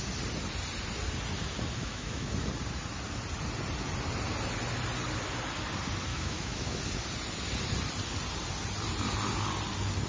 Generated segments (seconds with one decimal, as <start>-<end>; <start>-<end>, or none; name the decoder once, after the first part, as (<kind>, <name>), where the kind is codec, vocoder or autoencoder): 1.8-2.3 (autoencoder, DAC-VAE); 6.1-6.8

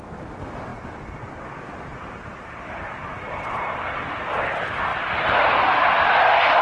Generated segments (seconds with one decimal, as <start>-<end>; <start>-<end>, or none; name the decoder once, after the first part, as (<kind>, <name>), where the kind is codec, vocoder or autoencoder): 1.9-4.3 (vocoder, BigVGAN v2)

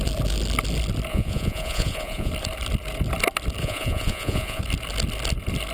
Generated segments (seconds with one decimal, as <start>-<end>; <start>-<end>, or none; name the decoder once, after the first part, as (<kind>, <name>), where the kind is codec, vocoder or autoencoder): 1.1-2.3 (vocoder, Vocos); 3.6-4.6

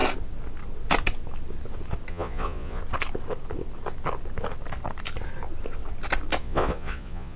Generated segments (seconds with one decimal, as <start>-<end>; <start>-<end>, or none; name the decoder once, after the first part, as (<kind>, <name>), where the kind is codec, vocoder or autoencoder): 2.1-2.8 (vocoder, Vocos); 6.4-7.4